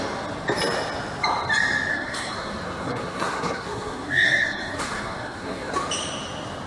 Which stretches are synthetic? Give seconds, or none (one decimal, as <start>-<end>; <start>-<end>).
1.9-5.7